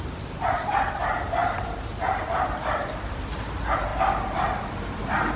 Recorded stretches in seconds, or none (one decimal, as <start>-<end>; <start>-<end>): 0.0-5.4